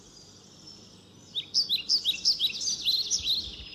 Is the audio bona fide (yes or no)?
yes